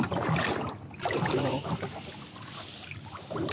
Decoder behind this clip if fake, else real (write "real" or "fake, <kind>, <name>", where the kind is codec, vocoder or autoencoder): real